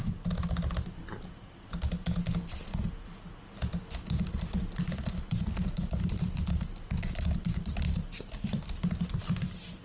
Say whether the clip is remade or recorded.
recorded